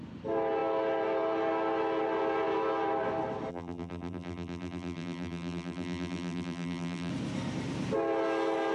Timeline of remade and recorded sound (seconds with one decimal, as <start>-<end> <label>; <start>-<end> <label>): 0.0-3.5 recorded; 3.5-7.1 remade; 7.1-8.7 recorded